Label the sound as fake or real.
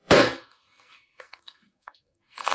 fake